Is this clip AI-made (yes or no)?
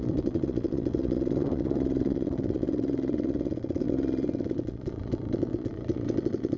yes